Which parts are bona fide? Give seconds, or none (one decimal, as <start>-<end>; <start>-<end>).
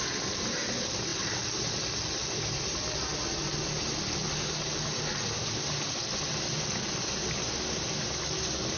0.0-8.8